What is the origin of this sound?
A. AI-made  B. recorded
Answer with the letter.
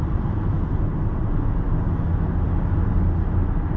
B